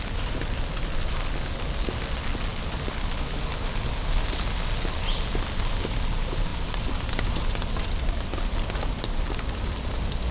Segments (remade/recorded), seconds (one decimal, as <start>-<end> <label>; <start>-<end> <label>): 0.0-10.3 recorded